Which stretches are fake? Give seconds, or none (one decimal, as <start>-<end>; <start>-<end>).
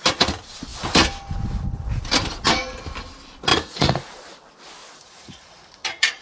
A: 3.5-4.1; 4.8-6.2